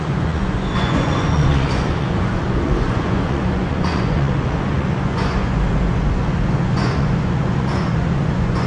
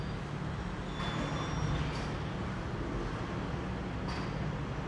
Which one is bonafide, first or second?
second